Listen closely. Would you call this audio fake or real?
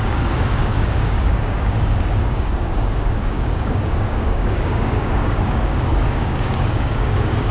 fake